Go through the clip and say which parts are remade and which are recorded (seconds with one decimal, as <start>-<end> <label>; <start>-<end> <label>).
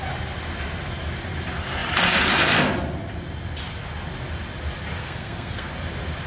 0.0-5.0 recorded; 5.0-5.7 remade; 5.7-6.3 recorded